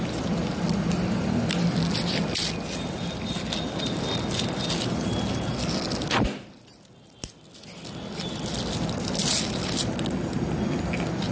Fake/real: real